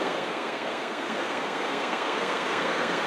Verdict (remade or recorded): remade